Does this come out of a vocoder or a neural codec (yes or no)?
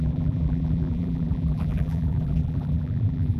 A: yes